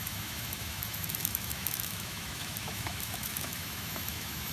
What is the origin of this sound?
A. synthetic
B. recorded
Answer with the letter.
A